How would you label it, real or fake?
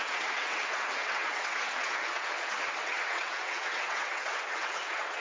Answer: fake